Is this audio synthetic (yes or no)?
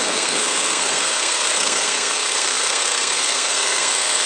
yes